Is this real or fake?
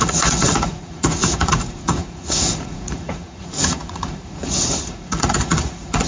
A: fake